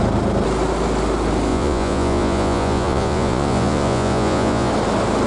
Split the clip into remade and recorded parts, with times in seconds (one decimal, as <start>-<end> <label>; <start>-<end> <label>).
0.0-1.5 recorded; 1.5-4.7 remade; 4.7-5.3 recorded